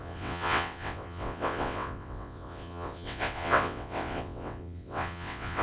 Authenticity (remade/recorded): remade